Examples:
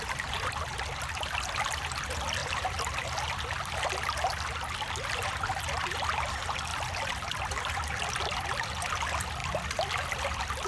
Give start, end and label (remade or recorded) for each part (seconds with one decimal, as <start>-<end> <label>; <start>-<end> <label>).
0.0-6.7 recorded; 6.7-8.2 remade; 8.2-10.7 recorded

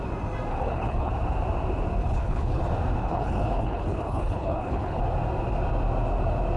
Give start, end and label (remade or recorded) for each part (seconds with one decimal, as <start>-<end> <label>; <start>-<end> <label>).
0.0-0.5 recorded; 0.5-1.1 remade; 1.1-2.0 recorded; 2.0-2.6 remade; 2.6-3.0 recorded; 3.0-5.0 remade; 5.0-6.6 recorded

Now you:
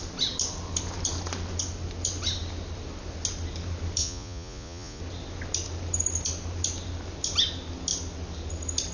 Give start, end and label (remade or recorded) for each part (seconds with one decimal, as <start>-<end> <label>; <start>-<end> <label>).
0.0-4.0 recorded; 4.0-5.0 remade; 5.0-8.9 recorded

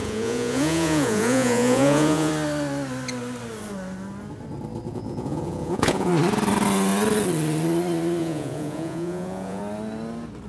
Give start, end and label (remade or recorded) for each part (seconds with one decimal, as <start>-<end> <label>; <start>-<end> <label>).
0.0-2.3 remade; 2.3-4.9 recorded; 4.9-6.1 remade; 6.1-8.2 recorded; 8.2-9.6 remade; 9.6-10.5 recorded